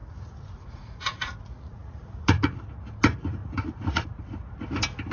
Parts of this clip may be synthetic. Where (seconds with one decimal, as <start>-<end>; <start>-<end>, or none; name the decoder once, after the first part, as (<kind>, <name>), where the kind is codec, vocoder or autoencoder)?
0.0-2.6 (vocoder, Vocos); 3.4-4.3